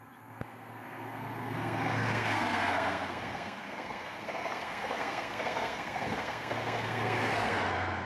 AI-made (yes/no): yes